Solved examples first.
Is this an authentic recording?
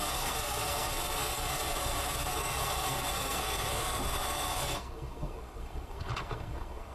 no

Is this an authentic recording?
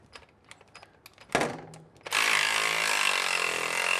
yes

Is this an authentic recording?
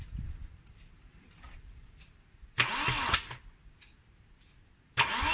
yes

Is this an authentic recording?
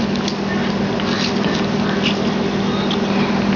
yes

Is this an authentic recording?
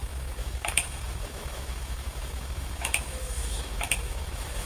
no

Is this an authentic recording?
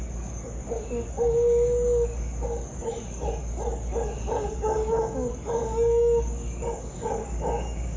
no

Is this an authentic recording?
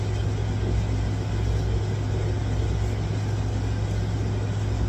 yes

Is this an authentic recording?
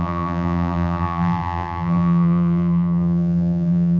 no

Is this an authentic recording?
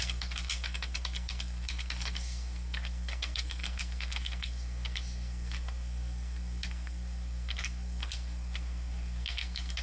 no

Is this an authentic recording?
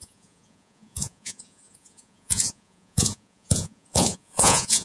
no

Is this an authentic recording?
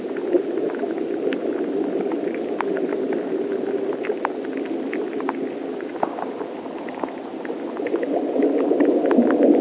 yes